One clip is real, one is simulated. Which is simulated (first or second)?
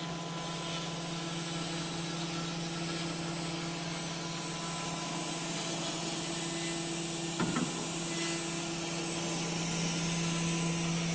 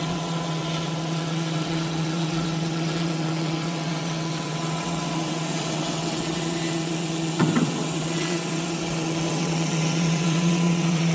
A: second